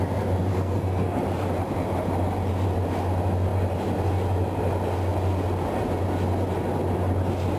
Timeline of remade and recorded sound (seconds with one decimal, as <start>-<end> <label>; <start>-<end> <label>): 0.0-0.5 recorded; 0.5-1.2 remade; 1.2-7.6 recorded